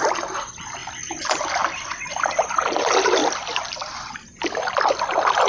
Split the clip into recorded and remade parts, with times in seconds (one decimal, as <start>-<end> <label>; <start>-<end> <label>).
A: 0.0-3.2 recorded; 3.2-4.4 remade; 4.4-5.5 recorded